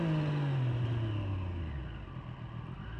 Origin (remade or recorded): recorded